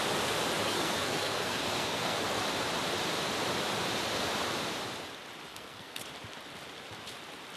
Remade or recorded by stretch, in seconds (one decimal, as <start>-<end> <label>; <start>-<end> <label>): 0.0-0.6 recorded; 0.6-2.4 remade; 2.4-5.5 recorded; 5.5-6.0 remade; 6.0-7.6 recorded